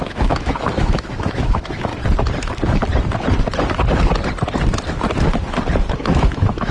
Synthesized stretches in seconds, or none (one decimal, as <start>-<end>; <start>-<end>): 0.0-1.9; 5.9-6.7